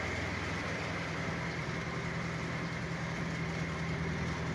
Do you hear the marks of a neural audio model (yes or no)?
yes